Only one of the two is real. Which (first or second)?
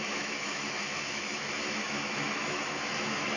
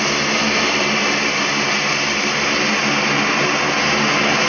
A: second